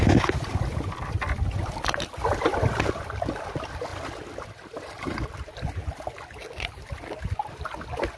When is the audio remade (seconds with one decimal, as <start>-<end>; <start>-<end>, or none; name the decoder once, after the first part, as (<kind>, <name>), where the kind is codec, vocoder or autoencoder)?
none